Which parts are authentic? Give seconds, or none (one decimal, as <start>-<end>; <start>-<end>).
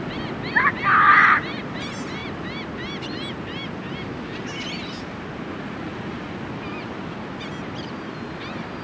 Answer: 0.0-5.5; 6.3-8.8